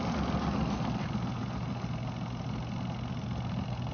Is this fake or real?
real